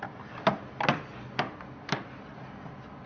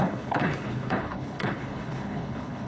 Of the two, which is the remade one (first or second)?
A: second